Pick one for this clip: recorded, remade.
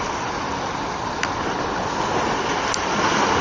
recorded